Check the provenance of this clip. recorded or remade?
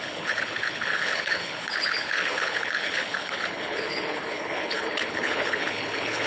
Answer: remade